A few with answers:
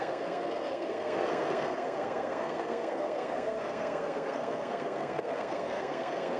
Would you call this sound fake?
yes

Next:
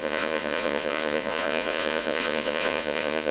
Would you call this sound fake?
yes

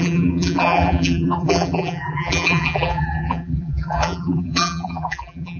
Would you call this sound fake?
yes